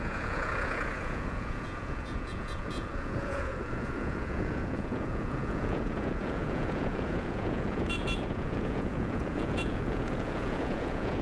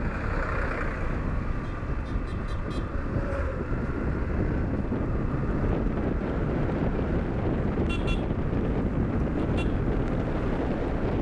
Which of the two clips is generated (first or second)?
first